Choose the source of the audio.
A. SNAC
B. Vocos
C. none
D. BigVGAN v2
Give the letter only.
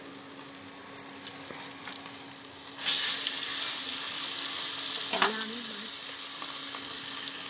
C